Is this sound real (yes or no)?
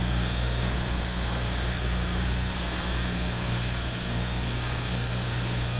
no